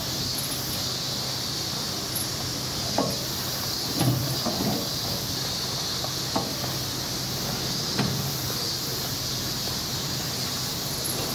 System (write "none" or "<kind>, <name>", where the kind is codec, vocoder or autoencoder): none